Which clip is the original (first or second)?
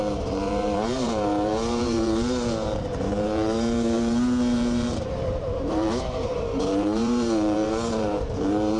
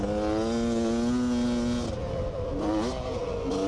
second